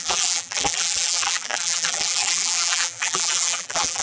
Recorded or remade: remade